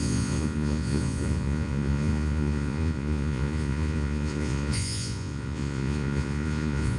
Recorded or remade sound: remade